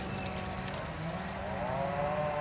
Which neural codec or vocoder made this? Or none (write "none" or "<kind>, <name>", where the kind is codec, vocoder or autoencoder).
none